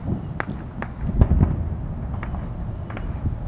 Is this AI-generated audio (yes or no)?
no